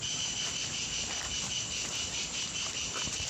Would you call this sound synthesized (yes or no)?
no